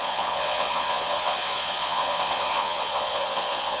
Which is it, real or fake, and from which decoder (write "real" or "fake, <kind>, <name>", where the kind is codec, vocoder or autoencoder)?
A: fake, vocoder, Vocos